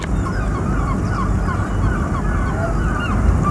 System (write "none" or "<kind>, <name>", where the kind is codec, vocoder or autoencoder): vocoder, BigVGAN v2